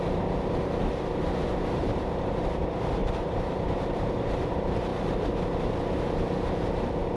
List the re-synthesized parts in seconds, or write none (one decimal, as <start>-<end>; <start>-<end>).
0.0-4.9; 5.6-7.2